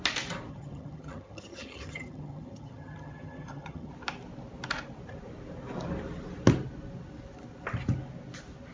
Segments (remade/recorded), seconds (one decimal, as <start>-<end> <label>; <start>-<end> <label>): 0.0-0.5 recorded; 0.5-3.9 remade; 3.9-8.7 recorded